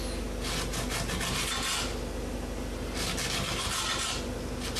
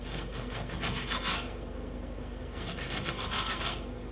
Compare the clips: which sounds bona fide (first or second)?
first